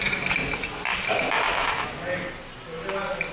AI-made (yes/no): no